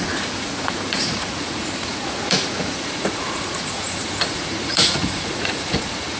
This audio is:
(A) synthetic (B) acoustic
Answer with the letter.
A